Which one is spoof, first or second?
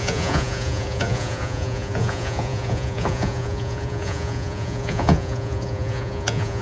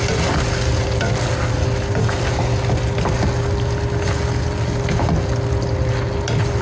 first